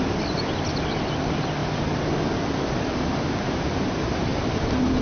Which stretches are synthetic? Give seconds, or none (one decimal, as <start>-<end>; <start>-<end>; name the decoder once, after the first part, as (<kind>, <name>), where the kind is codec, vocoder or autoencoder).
none